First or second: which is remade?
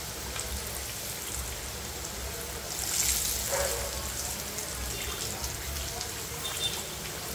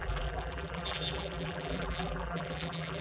second